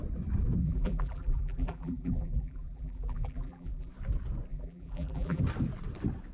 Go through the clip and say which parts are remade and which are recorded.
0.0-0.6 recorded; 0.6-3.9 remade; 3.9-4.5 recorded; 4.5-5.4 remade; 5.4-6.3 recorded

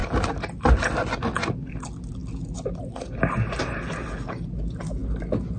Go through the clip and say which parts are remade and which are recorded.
0.0-5.6 recorded

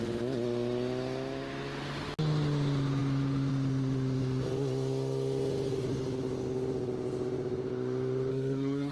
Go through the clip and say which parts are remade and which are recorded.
0.0-8.3 recorded; 8.3-8.9 remade

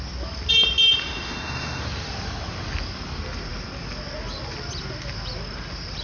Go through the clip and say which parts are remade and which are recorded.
0.0-1.0 recorded; 1.0-1.8 remade; 1.8-6.0 recorded

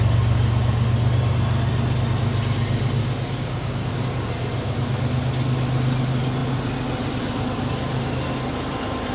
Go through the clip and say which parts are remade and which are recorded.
0.0-3.0 recorded; 3.0-3.9 remade; 3.9-9.1 recorded

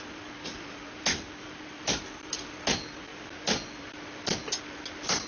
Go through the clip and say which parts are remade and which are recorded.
0.0-5.3 recorded